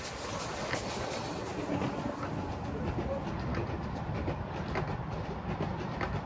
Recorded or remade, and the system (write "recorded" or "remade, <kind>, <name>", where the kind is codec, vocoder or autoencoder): recorded